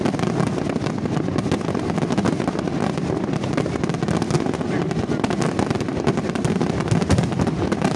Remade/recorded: recorded